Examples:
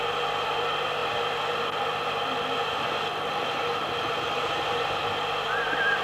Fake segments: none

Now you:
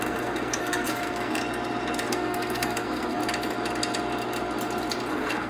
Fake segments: 0.0-1.4 (codec, SNAC); 2.1-3.2; 5.1-5.5

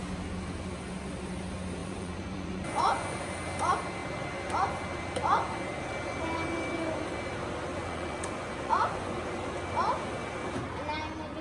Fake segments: 1.8-3.2 (vocoder, Vocos); 7.8-9.5

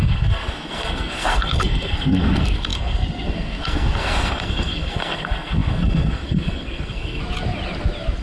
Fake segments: 0.0-7.2 (codec, SNAC)

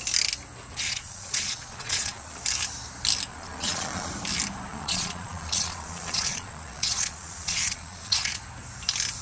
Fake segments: 0.7-2.4 (vocoder, Vocos); 3.3-4.1; 4.7-8.4